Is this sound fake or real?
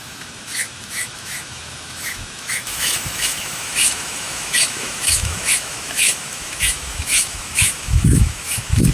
fake